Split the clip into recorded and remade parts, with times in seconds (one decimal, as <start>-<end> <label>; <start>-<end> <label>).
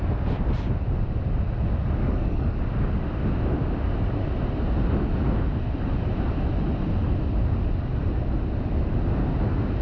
0.0-2.0 recorded; 2.0-2.6 remade; 2.6-9.8 recorded